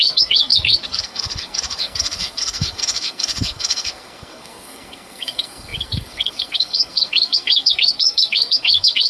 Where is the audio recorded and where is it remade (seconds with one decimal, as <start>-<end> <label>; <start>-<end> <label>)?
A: 0.0-9.1 remade